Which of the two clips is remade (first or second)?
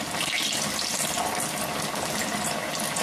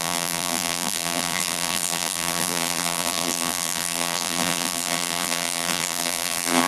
second